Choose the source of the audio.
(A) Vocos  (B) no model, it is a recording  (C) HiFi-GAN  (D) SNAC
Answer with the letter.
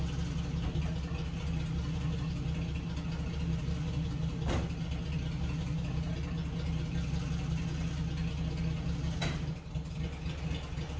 B